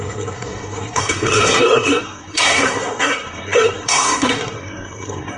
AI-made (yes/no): yes